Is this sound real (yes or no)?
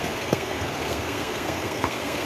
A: no